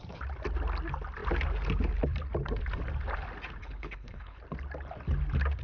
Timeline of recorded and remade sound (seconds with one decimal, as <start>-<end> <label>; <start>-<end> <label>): 0.0-3.6 recorded; 3.6-4.4 remade; 4.4-5.6 recorded